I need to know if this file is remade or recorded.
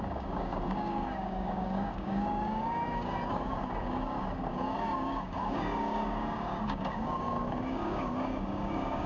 remade